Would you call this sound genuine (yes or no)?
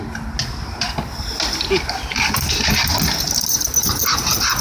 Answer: yes